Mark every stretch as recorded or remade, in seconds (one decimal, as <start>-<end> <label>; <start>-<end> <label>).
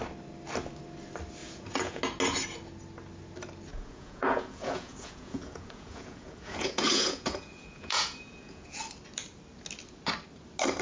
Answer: 0.0-1.4 recorded; 1.4-2.0 remade; 2.0-3.7 recorded; 3.7-8.8 remade; 8.8-10.8 recorded